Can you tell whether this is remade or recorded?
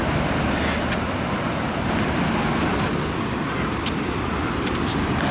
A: recorded